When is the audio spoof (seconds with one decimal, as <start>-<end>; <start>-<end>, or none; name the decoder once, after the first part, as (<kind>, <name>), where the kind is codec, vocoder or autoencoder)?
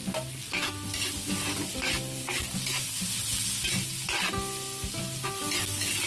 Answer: none